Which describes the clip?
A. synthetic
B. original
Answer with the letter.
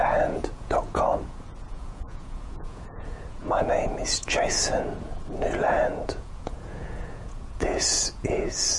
A